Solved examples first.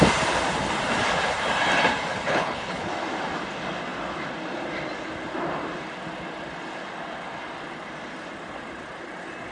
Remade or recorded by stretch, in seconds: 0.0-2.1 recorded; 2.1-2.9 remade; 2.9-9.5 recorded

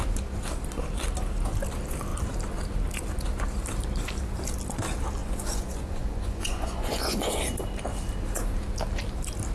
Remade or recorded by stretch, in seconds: 0.0-5.2 recorded; 5.2-7.4 remade; 7.4-9.5 recorded

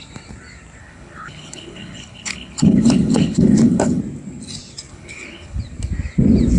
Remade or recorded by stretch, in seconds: 0.0-0.8 recorded; 0.8-4.0 remade; 4.0-4.9 recorded; 4.9-5.6 remade; 5.6-6.6 recorded

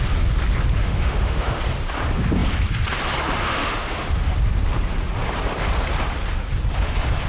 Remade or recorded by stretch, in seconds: 0.0-0.8 recorded; 0.8-1.6 remade; 1.6-3.4 recorded; 3.4-4.3 remade; 4.3-7.3 recorded

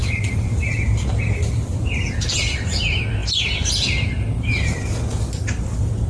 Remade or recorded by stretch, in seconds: 0.0-2.8 remade; 2.8-6.1 recorded

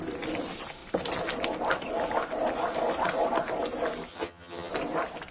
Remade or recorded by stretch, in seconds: 0.0-4.1 recorded; 4.1-4.7 remade; 4.7-5.3 recorded